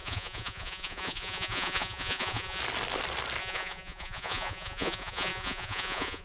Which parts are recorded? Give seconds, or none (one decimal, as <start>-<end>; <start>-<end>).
2.6-3.4